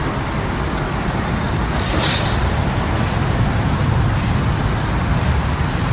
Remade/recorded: recorded